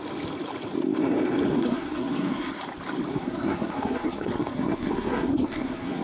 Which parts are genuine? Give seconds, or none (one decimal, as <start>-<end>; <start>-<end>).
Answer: 0.0-1.5; 2.5-3.1